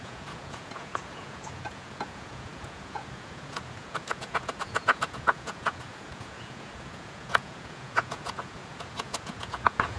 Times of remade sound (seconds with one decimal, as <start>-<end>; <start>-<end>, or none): 0.0-10.0